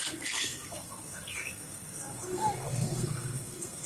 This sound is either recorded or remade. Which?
remade